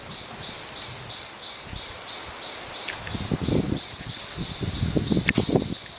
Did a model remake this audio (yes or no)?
no